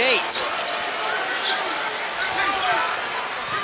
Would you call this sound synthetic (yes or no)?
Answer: no